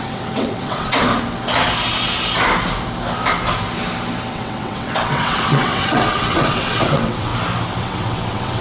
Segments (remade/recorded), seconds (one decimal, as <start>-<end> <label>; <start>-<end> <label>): 0.0-1.1 remade; 1.1-4.3 recorded; 4.3-7.3 remade; 7.3-7.8 recorded; 7.8-8.6 remade